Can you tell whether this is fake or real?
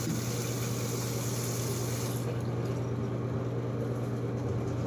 real